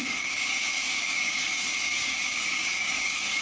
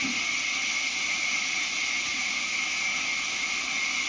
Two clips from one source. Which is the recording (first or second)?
second